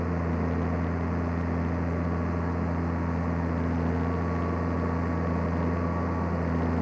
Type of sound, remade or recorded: recorded